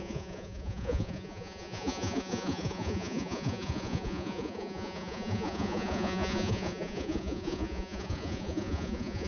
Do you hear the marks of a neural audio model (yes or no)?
yes